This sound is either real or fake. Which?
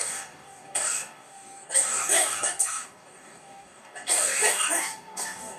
fake